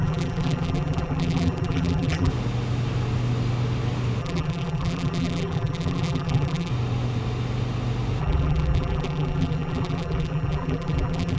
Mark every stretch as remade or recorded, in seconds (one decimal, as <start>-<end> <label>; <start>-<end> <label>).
0.0-2.3 remade; 2.3-4.2 recorded; 4.2-6.7 remade; 6.7-8.2 recorded; 8.2-11.4 remade